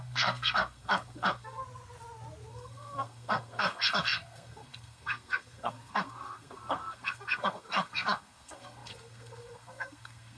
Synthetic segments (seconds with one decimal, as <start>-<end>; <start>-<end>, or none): 0.0-1.6; 2.5-10.4